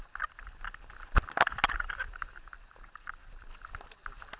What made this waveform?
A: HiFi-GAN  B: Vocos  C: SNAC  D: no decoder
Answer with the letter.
D